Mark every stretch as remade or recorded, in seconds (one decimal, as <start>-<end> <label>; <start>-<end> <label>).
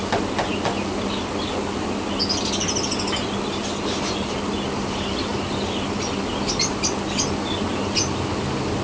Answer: 0.0-8.8 recorded